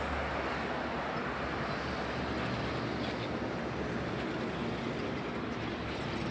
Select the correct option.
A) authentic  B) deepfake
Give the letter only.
A